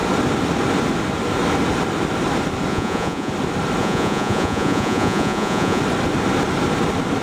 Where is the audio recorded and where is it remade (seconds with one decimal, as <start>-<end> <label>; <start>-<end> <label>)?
0.0-2.7 recorded; 2.7-3.3 remade; 3.3-3.8 recorded; 3.8-5.8 remade; 5.8-7.2 recorded